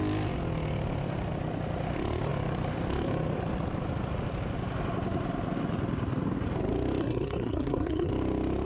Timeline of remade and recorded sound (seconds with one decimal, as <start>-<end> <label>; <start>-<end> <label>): 0.0-7.0 recorded; 7.0-8.1 remade; 8.1-8.7 recorded